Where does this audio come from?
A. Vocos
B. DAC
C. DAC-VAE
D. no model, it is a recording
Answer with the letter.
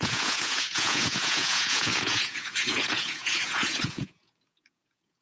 A